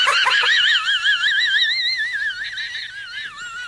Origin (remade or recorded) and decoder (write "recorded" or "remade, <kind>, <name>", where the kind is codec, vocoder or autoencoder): recorded